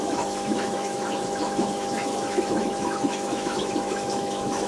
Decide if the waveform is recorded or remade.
remade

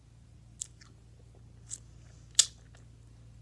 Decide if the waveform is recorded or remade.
recorded